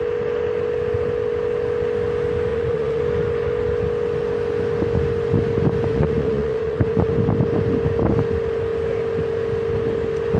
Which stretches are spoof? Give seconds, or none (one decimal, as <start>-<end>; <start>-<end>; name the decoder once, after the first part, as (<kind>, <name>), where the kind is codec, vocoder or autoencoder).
2.5-3.0 (vocoder, Vocos); 5.9-7.1